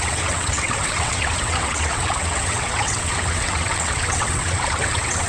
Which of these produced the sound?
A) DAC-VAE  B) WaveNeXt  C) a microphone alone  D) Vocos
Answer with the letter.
B